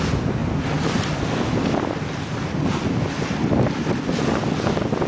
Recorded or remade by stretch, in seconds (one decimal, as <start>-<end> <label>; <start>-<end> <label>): 0.0-5.1 recorded